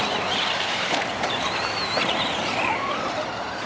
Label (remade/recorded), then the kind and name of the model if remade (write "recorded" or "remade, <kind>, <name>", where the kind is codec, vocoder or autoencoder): remade, vocoder, BigVGAN v2